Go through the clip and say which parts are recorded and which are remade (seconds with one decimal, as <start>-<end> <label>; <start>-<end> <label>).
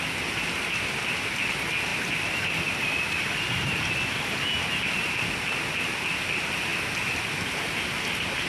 0.0-1.9 recorded; 1.9-3.9 remade; 3.9-8.5 recorded